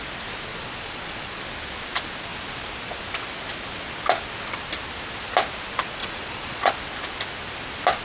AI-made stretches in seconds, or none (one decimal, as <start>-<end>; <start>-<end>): 0.5-1.4; 6.0-6.7